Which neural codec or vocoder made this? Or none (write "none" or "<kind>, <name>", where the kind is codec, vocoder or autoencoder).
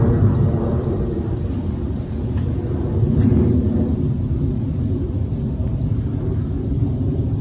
none